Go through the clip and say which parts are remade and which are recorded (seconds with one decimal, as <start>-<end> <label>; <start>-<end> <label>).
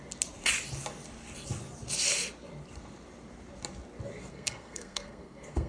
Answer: 0.0-4.3 recorded; 4.3-5.7 remade